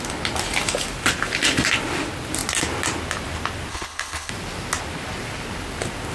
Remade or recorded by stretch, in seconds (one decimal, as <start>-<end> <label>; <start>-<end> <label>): 0.0-3.7 recorded; 3.7-4.3 remade; 4.3-6.1 recorded